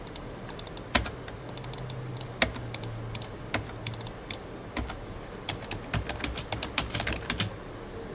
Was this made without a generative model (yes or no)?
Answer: yes